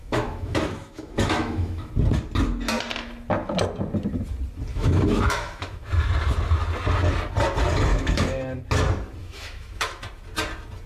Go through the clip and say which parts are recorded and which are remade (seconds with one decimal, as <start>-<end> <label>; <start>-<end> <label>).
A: 0.0-1.9 remade; 1.9-4.7 recorded; 4.7-5.9 remade; 5.9-7.9 recorded; 7.9-8.6 remade; 8.6-9.2 recorded; 9.2-10.0 remade; 10.0-10.9 recorded